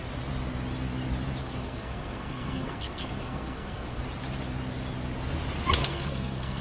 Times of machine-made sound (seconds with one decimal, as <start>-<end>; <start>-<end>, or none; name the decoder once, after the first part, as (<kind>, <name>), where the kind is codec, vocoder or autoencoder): 1.4-4.0 (codec, SNAC); 5.8-6.6